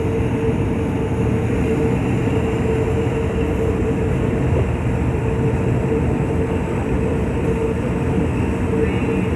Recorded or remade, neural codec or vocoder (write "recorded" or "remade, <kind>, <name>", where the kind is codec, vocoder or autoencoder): recorded